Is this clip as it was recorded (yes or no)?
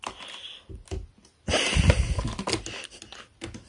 yes